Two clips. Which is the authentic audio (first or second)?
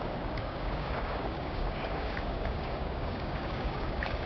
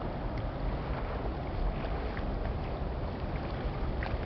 second